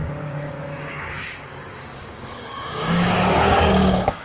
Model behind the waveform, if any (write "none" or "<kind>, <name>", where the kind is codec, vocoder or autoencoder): codec, DAC